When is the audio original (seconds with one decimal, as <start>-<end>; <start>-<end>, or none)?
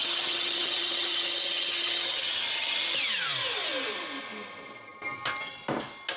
2.8-6.2